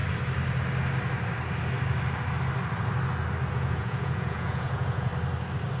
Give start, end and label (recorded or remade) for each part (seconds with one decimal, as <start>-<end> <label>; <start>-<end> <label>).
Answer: 0.0-3.5 recorded; 3.5-5.1 remade; 5.1-5.8 recorded